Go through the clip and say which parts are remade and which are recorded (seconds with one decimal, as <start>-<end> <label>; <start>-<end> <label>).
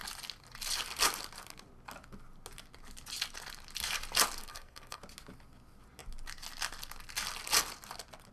0.0-4.4 recorded; 4.4-5.0 remade; 5.0-8.3 recorded